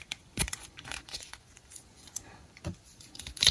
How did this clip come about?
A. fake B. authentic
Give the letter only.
A